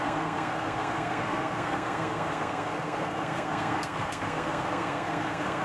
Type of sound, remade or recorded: remade